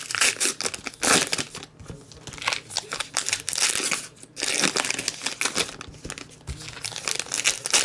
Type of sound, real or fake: real